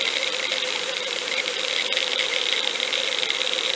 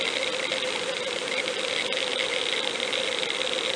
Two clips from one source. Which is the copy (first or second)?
first